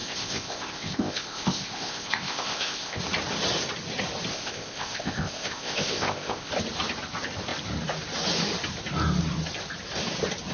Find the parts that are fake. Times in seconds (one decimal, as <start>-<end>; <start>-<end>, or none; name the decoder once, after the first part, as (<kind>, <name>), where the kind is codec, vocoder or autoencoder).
0.0-3.0 (codec, ZipCodec); 4.3-6.5